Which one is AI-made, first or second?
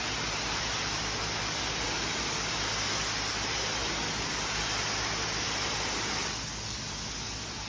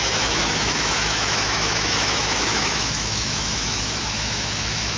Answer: second